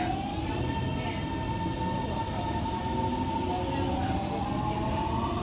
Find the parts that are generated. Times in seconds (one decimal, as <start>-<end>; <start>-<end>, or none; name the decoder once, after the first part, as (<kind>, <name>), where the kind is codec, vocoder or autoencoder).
none